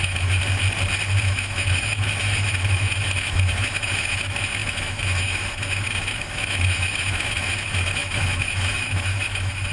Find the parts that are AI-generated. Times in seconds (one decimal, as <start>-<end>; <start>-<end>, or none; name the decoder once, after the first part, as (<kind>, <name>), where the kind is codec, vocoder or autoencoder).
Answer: 0.0-0.4 (autoencoder, DAC-VAE); 1.2-9.7